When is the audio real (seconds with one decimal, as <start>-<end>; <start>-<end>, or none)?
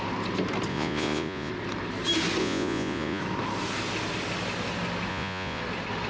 0.0-0.7; 1.5-2.4; 3.2-5.1; 5.6-6.1